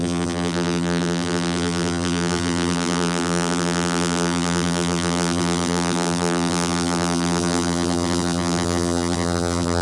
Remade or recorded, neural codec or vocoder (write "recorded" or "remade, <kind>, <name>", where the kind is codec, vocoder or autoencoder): remade, vocoder, BigVGAN v2